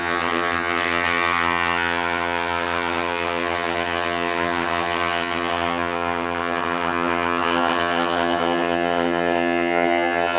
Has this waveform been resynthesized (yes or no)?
yes